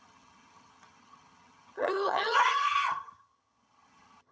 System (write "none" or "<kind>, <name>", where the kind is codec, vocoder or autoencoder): vocoder, HiFi-GAN